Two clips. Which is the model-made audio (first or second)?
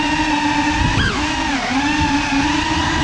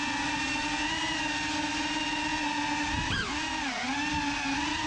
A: first